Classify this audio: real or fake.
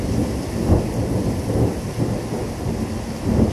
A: real